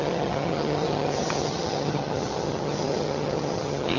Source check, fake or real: fake